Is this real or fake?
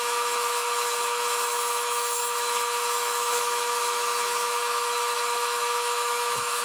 fake